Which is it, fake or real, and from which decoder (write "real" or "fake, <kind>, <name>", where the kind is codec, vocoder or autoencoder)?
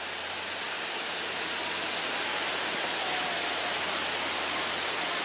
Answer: real